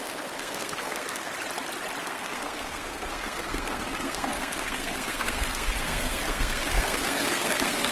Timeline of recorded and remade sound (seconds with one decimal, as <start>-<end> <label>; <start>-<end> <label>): 0.0-1.3 remade; 1.3-2.0 recorded; 2.0-7.9 remade